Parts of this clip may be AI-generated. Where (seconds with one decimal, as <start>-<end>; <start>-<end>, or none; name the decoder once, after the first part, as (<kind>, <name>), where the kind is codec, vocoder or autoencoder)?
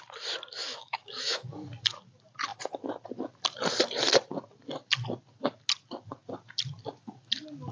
0.6-1.5 (autoencoder, DAC-VAE)